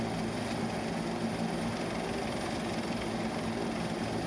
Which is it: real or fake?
real